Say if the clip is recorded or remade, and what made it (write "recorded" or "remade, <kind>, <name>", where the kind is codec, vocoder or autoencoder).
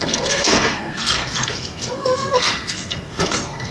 remade, codec, SNAC